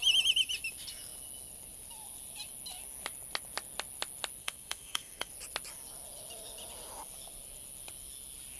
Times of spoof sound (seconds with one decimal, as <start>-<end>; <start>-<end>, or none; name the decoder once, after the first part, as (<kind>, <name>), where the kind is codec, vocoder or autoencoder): 4.4-5.3 (codec, SNAC)